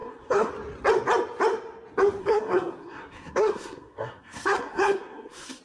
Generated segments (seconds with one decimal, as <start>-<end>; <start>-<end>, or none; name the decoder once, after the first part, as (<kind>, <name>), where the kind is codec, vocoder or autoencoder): 0.0-0.5 (codec, SNAC); 2.2-5.6